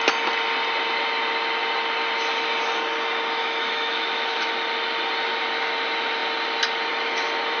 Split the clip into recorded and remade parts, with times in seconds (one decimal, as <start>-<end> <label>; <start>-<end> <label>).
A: 0.0-3.4 recorded; 3.4-4.5 remade; 4.5-7.6 recorded